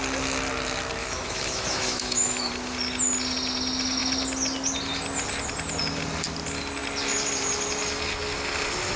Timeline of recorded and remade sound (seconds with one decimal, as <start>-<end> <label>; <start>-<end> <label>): 0.0-1.0 recorded; 1.0-2.5 remade; 2.5-9.0 recorded